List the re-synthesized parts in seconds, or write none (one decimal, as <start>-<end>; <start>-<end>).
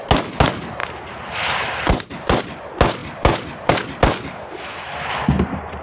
0.8-2.4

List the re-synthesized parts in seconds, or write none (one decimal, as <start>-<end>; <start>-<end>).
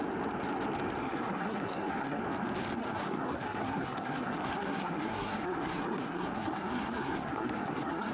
1.0-2.2; 2.8-8.1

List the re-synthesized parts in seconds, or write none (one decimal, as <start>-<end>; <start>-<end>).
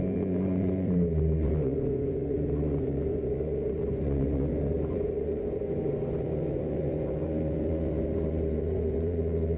0.0-9.6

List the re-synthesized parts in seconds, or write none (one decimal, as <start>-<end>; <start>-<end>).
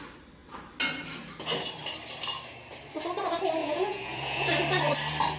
3.6-4.5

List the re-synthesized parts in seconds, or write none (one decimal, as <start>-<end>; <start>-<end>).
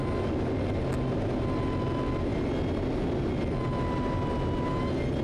none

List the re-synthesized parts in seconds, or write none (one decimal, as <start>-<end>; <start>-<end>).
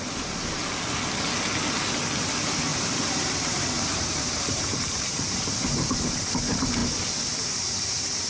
2.7-6.2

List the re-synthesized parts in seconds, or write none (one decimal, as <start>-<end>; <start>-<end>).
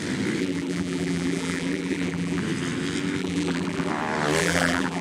0.4-2.4; 3.2-3.9; 4.4-5.0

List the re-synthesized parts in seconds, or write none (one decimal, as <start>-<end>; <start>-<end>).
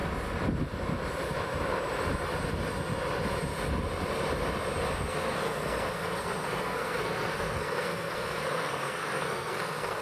4.9-10.0